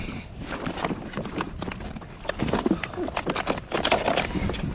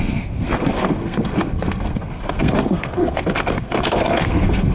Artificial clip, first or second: second